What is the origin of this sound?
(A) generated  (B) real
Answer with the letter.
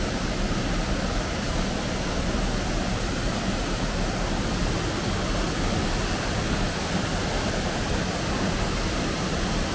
B